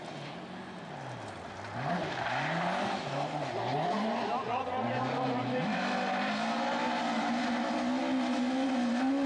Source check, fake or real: real